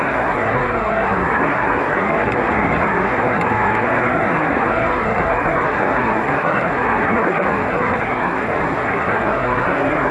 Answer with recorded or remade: remade